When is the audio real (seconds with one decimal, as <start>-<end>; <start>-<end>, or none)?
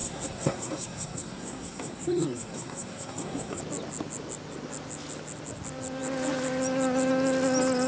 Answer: 3.6-7.9